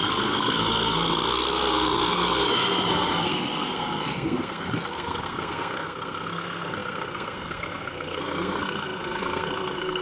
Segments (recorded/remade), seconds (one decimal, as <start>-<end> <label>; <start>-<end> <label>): 0.0-10.0 remade